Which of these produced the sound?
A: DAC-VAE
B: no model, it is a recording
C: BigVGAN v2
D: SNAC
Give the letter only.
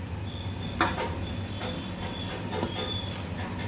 B